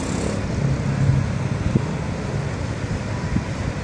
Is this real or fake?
real